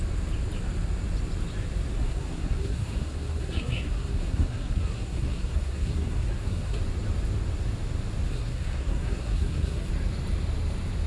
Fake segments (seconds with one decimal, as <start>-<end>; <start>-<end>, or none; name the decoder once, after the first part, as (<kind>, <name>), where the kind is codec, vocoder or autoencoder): 2.0-6.8 (codec, SNAC); 8.3-9.9